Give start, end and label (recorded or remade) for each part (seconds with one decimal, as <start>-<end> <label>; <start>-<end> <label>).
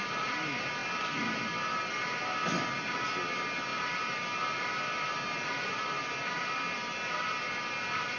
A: 0.0-8.2 recorded